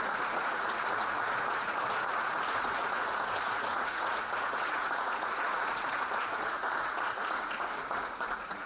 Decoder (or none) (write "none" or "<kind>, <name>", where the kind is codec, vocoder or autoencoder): vocoder, Vocos